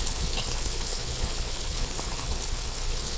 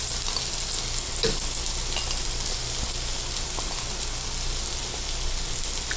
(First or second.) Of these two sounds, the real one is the second